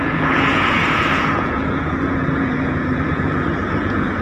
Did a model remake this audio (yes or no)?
yes